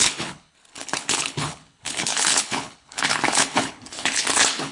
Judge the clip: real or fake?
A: fake